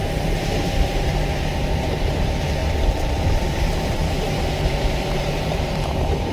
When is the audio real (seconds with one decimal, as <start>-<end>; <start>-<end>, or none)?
4.0-4.5